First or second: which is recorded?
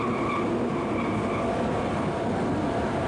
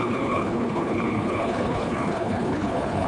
first